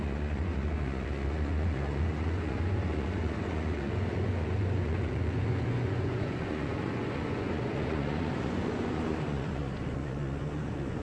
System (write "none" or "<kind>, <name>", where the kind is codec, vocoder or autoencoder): vocoder, Vocos